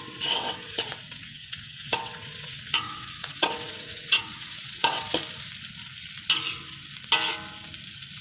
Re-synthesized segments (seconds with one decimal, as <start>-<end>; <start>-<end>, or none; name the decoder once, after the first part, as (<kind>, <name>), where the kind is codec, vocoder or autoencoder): 0.0-5.2 (vocoder, WaveNeXt)